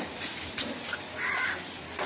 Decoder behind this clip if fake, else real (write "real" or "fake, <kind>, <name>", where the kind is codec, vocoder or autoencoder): fake, vocoder, BigVGAN v2